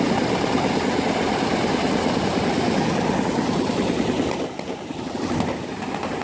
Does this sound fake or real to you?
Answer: real